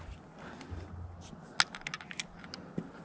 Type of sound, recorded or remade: recorded